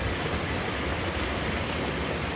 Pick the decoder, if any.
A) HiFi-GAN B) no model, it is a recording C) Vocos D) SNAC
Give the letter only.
B